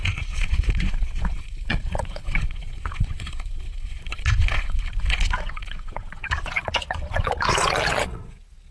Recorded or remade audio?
remade